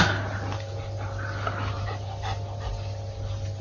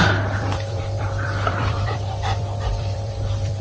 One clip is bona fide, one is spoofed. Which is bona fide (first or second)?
first